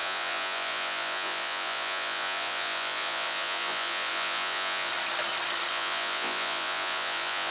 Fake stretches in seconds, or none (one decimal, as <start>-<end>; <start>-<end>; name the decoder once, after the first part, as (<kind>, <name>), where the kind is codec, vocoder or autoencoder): 0.0-4.9 (vocoder, Vocos); 5.7-7.5